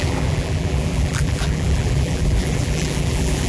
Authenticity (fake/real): fake